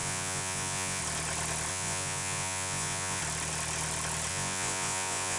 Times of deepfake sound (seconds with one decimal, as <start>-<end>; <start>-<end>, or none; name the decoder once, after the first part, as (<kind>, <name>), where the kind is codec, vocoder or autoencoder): 0.0-1.0 (vocoder, Vocos); 1.7-3.2; 4.3-5.4